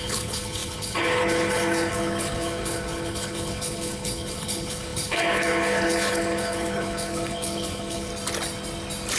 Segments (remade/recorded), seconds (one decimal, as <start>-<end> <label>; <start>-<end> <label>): 0.0-8.1 remade; 8.1-9.2 recorded